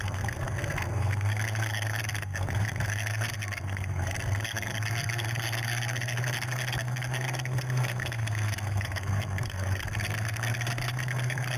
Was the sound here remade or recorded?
remade